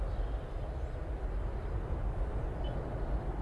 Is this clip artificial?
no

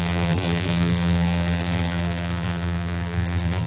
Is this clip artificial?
yes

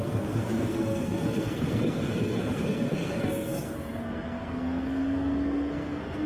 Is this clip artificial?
yes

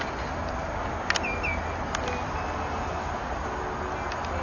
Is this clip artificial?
no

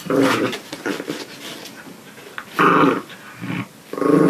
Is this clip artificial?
no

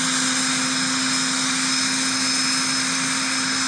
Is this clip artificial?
no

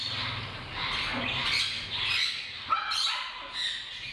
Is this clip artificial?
no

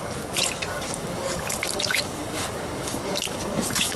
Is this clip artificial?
yes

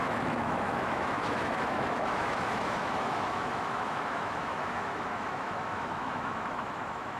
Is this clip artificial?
yes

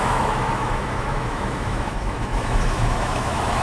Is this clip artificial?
yes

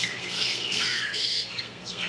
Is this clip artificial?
yes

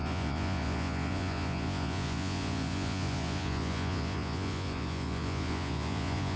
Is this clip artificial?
yes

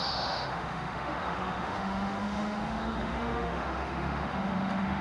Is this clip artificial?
yes